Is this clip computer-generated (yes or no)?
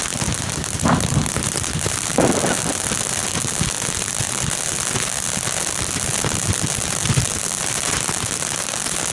no